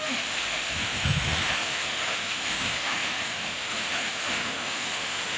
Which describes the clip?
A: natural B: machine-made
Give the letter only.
B